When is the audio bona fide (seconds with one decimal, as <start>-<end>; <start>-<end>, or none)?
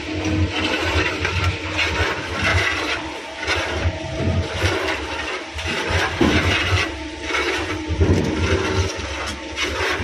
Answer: 0.0-0.8; 1.3-2.5; 6.9-10.0